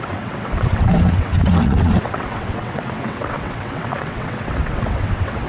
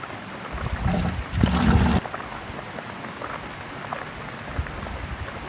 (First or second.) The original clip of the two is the second